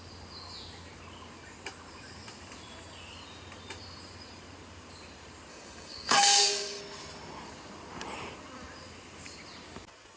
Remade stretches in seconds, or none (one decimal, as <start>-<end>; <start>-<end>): 5.5-6.8